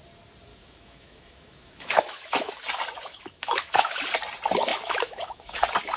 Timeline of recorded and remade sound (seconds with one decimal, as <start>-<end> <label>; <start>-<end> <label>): 0.0-0.5 recorded; 0.5-2.5 remade; 2.5-3.0 recorded; 3.0-4.0 remade; 4.0-4.7 recorded; 4.7-5.6 remade; 5.6-6.0 recorded